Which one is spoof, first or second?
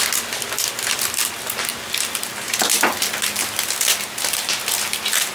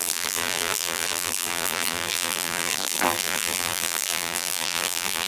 second